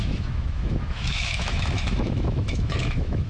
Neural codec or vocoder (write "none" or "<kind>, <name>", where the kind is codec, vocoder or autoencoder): autoencoder, DAC-VAE